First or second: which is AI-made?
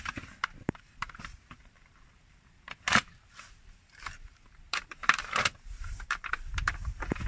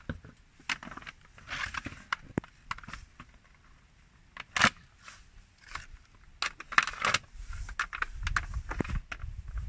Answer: first